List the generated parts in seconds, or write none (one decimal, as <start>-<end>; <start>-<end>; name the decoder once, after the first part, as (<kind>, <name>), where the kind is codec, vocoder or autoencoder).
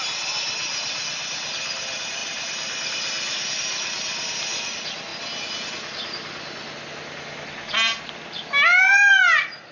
none